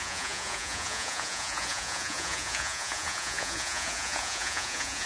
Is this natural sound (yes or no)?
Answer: no